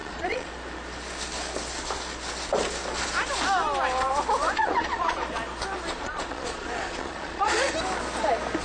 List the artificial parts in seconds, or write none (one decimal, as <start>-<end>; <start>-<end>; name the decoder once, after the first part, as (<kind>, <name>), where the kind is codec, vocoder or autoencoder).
0.0-0.5 (vocoder, Vocos); 4.6-5.2; 5.9-7.7